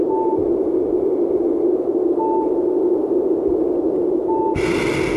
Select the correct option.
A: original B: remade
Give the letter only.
A